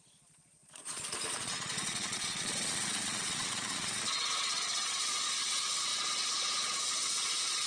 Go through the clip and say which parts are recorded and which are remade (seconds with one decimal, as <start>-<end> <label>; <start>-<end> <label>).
0.0-7.7 remade